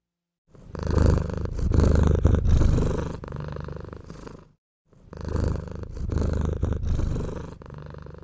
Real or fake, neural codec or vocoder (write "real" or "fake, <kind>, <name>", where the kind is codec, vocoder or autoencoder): real